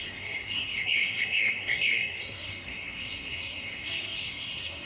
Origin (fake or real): fake